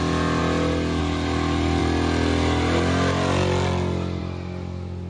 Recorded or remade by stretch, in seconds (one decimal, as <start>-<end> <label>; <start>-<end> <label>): 0.0-5.1 recorded